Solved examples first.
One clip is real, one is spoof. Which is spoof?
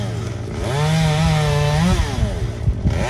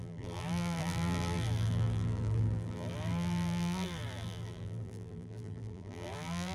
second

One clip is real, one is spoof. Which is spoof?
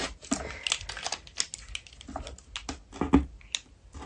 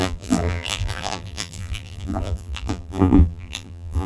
second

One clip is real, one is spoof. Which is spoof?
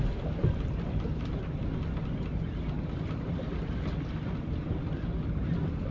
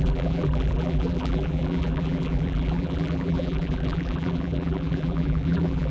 second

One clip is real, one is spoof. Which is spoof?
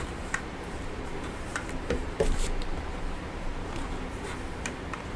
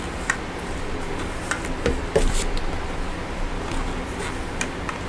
first